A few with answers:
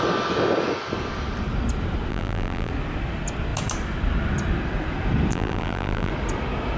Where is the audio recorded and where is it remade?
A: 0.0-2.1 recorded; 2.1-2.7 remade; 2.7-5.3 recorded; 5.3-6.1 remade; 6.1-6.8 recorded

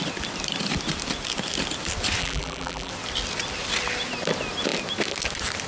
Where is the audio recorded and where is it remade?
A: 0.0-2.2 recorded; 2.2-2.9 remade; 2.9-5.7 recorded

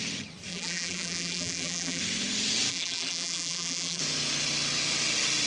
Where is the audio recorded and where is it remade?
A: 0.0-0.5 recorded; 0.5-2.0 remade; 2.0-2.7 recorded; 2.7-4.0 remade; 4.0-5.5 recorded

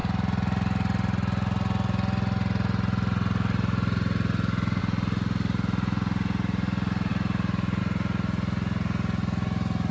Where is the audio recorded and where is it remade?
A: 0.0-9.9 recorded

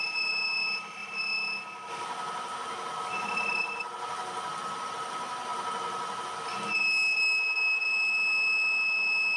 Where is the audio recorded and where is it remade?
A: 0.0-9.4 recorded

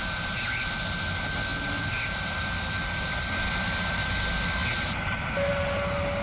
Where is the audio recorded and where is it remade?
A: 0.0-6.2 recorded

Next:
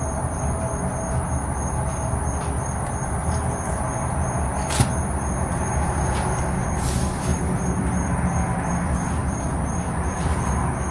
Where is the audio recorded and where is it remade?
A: 0.0-7.3 recorded; 7.3-8.7 remade; 8.7-9.2 recorded; 9.2-10.9 remade

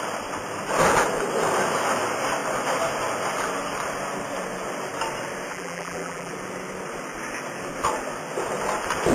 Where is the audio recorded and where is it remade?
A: 0.0-5.5 recorded; 5.5-6.3 remade; 6.3-9.1 recorded